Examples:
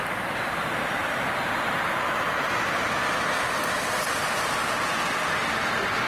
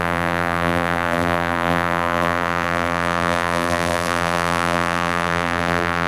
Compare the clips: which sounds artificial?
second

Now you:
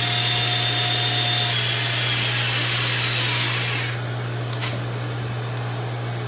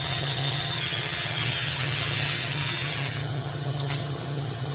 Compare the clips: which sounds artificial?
second